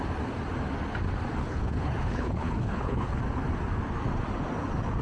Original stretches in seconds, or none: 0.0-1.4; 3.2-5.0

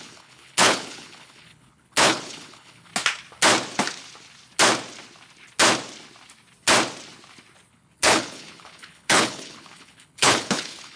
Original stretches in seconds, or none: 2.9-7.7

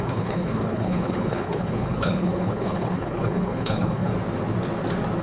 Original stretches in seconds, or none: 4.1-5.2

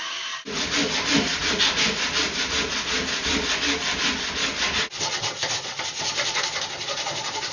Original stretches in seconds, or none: 0.0-7.5

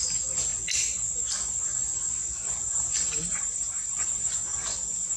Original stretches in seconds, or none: 0.0-5.2

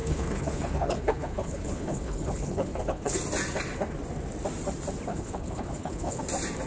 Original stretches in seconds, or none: 3.2-5.1; 6.2-6.7

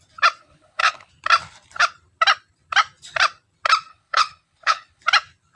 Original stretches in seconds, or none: 0.0-0.4; 1.1-3.9; 5.0-5.6